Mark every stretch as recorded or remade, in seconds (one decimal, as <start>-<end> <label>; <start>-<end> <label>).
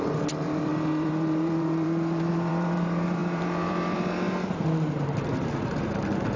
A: 0.0-6.4 remade